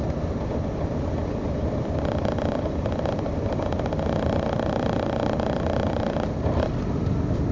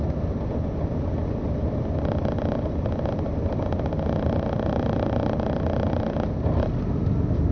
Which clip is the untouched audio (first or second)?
second